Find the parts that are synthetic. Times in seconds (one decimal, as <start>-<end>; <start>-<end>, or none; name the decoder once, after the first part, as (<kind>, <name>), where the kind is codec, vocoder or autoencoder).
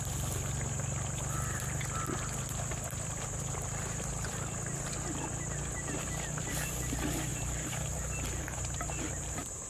7.3-9.7 (vocoder, BigVGAN v2)